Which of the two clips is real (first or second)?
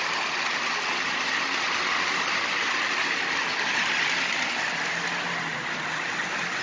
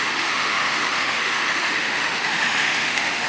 first